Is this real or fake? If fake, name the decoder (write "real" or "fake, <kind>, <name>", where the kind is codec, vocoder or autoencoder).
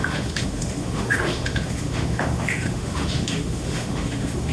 fake, autoencoder, DAC-VAE